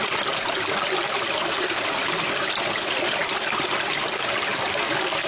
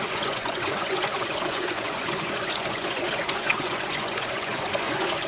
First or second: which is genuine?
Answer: first